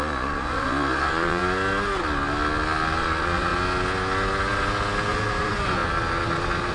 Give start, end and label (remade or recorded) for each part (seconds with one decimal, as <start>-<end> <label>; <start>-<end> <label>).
0.0-1.4 remade; 1.4-3.0 recorded; 3.0-3.5 remade; 3.5-5.1 recorded; 5.1-5.8 remade; 5.8-6.7 recorded